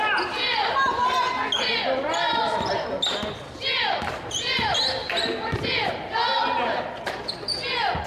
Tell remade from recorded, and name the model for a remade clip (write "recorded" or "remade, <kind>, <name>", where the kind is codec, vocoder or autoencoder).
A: recorded